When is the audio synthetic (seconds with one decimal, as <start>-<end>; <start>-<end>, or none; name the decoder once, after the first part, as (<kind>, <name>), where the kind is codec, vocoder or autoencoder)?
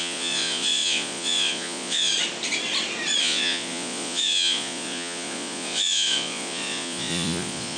0.0-2.1 (vocoder, Vocos); 3.2-7.8